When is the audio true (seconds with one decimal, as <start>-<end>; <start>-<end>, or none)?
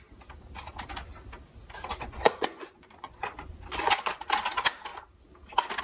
0.0-1.9; 4.2-5.8